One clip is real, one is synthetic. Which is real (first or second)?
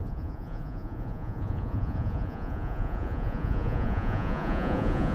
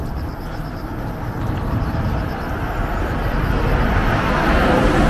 second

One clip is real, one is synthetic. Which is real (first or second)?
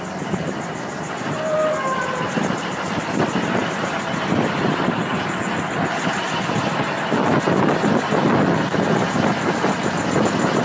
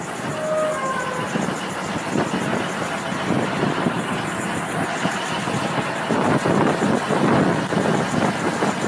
second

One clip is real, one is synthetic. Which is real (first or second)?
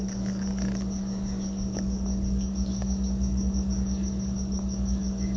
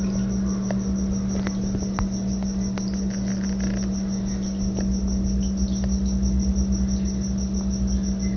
second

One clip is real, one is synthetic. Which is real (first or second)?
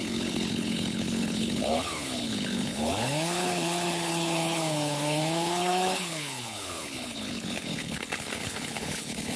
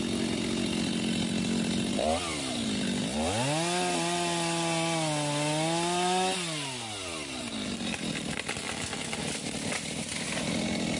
second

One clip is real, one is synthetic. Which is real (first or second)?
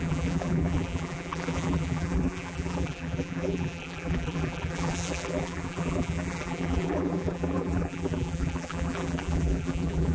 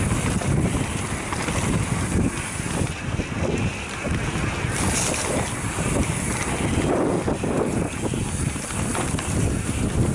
second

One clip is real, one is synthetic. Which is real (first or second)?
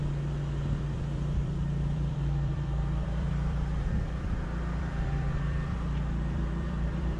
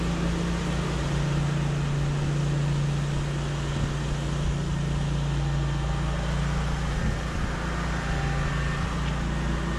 second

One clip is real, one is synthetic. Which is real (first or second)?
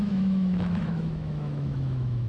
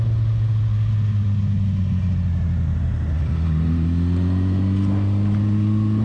second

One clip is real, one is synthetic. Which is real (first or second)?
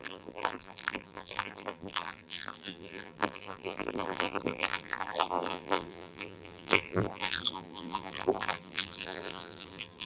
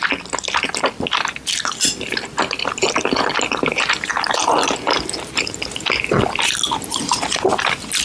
second